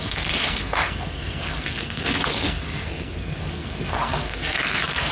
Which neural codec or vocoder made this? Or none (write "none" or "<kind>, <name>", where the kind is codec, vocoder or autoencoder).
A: codec, SNAC